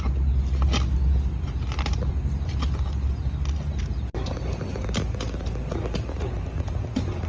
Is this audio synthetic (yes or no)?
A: no